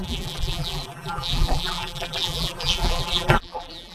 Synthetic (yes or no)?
yes